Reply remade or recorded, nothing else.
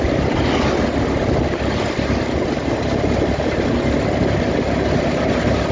recorded